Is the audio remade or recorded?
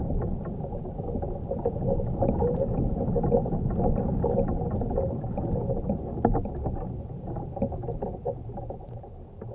recorded